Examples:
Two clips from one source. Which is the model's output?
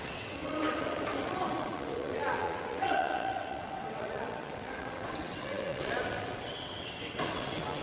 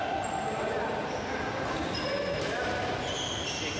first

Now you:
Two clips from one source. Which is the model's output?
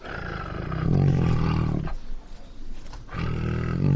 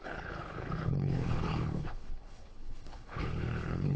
second